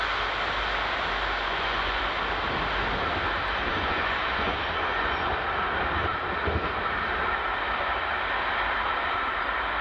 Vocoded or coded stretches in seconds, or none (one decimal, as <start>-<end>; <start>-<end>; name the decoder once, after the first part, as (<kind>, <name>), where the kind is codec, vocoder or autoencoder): 1.4-2.0 (vocoder, Vocos); 3.7-5.3